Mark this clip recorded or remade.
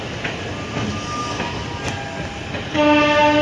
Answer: recorded